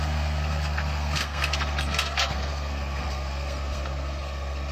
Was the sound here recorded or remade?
remade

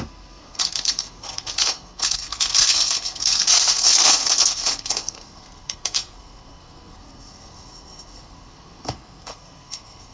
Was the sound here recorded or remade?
remade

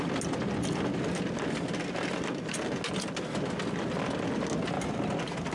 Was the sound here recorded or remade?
recorded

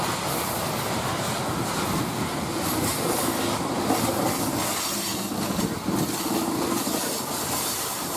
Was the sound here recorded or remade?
recorded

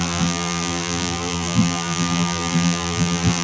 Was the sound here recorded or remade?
remade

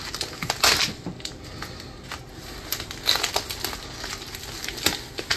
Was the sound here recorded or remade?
recorded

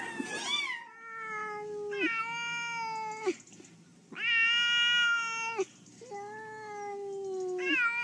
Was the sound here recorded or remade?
recorded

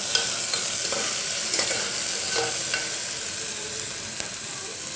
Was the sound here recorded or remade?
recorded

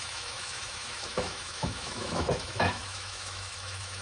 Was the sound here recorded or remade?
remade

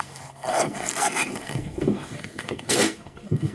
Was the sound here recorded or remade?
remade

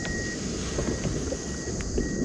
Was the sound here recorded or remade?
recorded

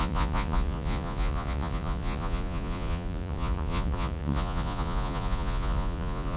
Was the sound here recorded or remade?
remade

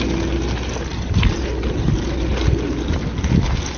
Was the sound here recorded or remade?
recorded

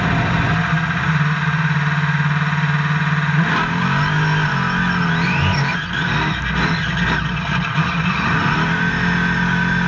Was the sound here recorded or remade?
recorded